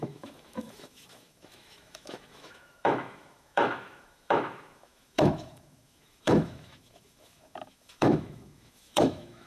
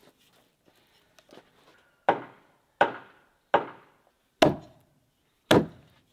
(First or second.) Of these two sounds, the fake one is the first